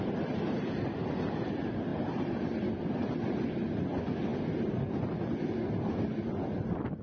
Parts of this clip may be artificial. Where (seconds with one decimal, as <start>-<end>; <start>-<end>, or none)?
1.9-2.7